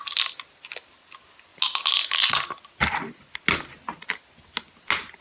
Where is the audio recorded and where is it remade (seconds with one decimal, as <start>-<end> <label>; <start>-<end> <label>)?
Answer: 0.0-5.2 recorded